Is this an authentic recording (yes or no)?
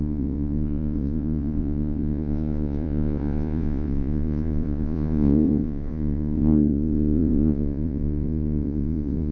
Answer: no